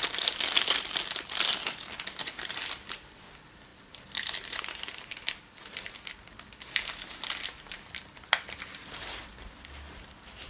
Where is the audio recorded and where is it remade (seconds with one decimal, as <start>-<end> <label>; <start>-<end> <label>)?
0.0-3.7 recorded; 3.7-5.9 remade; 5.9-10.5 recorded